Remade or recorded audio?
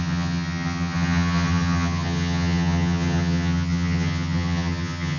remade